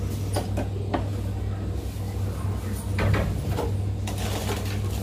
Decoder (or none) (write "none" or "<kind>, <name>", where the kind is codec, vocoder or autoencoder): none